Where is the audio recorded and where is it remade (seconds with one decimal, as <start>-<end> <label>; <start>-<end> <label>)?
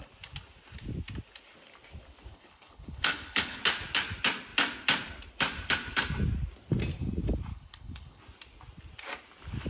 0.0-2.3 recorded; 2.3-3.6 remade; 3.6-7.5 recorded; 7.5-8.2 remade; 8.2-9.7 recorded